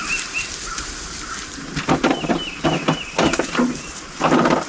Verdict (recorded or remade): recorded